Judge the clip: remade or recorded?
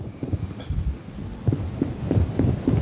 recorded